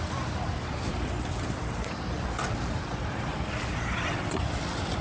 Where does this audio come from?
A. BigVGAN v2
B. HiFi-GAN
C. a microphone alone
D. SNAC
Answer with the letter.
A